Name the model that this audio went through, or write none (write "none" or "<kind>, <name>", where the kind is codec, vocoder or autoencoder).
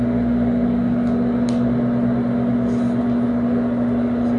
none